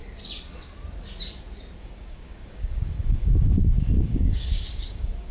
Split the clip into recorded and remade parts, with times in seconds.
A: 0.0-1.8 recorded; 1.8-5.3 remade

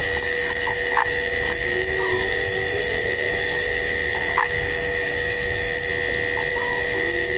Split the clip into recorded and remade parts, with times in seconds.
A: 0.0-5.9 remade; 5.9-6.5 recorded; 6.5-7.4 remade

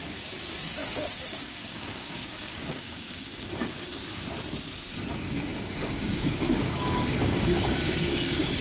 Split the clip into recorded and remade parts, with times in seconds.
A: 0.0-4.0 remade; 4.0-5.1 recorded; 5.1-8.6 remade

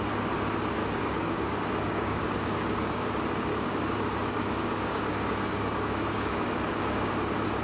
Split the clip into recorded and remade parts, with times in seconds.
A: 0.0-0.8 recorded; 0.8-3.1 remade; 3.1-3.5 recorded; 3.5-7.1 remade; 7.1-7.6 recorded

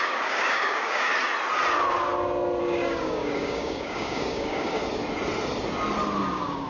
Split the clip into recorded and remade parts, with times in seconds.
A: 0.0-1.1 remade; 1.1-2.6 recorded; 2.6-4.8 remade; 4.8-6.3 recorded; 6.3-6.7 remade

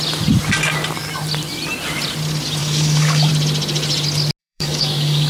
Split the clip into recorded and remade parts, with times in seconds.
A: 0.0-2.6 recorded; 2.6-3.3 remade; 3.3-4.4 recorded; 4.4-5.3 remade